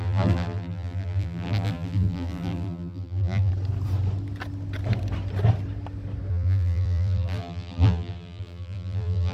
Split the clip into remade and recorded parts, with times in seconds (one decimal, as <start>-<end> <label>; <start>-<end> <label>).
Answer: 0.0-3.5 remade; 3.5-6.3 recorded; 6.3-9.3 remade